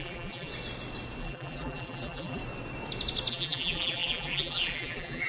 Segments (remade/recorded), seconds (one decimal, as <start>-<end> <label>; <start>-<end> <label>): 0.0-0.5 remade; 0.5-1.2 recorded; 1.2-2.4 remade; 2.4-3.3 recorded; 3.3-5.3 remade